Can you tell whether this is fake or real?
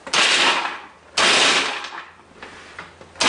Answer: real